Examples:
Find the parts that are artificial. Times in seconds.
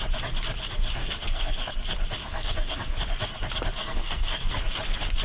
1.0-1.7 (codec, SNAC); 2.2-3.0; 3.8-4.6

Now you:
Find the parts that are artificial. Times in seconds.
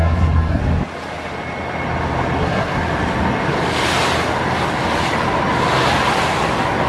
0.0-0.6 (codec, SNAC); 2.4-2.8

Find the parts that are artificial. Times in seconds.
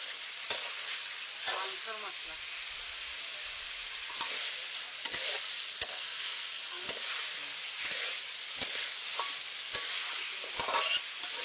5.7-6.6 (codec, SNAC)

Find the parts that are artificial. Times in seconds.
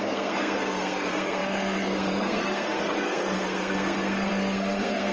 0.0-5.1 (codec, SNAC)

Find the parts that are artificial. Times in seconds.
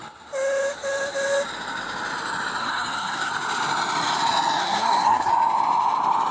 2.6-3.3 (codec, SNAC); 4.6-5.3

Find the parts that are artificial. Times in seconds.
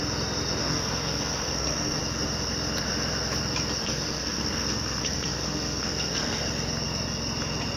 0.6-2.0 (codec, SNAC); 3.8-6.4